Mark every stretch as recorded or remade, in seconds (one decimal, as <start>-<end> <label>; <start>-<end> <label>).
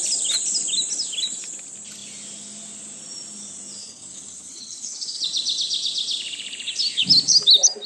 0.0-3.8 recorded; 3.8-5.2 remade; 5.2-7.9 recorded